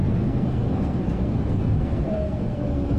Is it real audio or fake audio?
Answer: fake